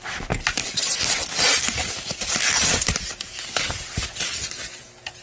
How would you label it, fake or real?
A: real